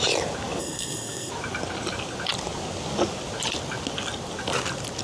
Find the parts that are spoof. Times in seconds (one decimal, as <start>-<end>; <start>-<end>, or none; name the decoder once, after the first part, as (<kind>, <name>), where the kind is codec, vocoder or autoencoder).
0.6-1.3 (codec, SNAC)